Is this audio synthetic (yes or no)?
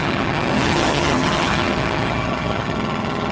yes